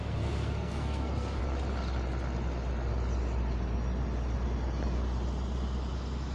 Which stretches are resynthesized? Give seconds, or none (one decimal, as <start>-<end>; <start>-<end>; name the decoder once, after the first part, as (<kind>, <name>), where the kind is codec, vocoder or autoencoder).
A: 0.0-1.4 (codec, SNAC)